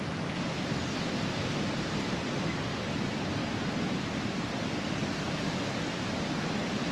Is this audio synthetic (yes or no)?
no